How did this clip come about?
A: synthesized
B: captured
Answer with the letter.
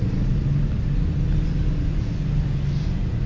B